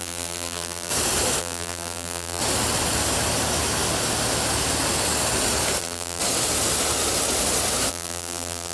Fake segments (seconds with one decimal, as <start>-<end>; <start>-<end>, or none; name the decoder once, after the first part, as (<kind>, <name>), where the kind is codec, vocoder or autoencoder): 0.0-0.9 (vocoder, BigVGAN v2); 1.4-2.4; 5.8-6.2; 7.9-8.7